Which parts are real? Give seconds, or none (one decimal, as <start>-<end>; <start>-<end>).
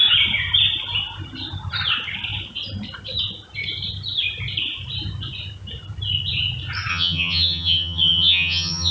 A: 0.0-6.9